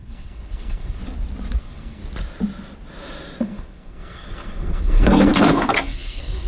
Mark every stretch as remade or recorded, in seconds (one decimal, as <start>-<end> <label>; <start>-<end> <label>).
0.0-1.0 remade; 1.0-1.6 recorded; 1.6-2.0 remade; 2.0-3.4 recorded; 3.4-6.5 remade